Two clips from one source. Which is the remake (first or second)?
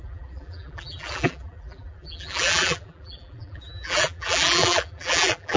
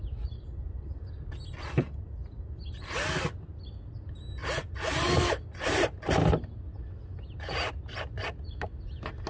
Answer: first